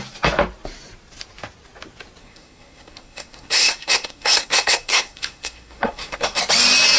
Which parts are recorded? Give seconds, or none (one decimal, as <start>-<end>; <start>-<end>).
0.0-2.2; 6.4-7.0